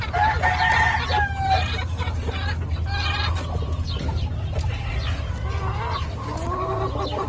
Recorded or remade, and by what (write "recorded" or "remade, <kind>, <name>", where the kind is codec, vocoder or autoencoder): recorded